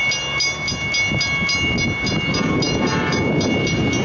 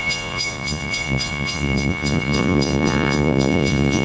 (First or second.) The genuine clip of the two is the first